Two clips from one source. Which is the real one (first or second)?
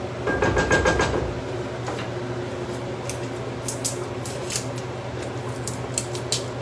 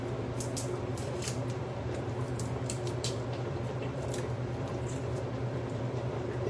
first